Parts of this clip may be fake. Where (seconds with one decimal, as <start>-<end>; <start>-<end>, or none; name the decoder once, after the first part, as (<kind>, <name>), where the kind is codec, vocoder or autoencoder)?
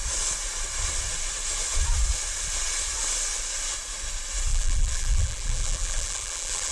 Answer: 4.5-6.7 (vocoder, BigVGAN v2)